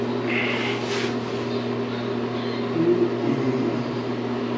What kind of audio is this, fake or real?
real